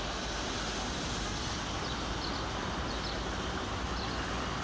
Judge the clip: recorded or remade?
recorded